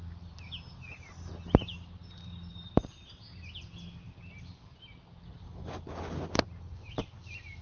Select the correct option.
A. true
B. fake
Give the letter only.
A